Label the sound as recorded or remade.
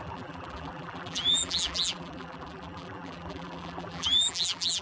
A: remade